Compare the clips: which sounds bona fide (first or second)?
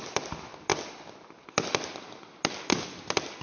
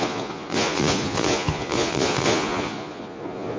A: first